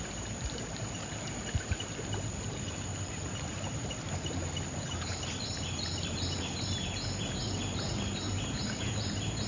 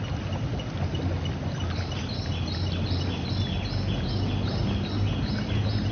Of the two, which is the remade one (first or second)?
first